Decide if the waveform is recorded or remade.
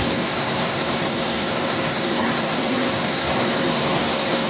remade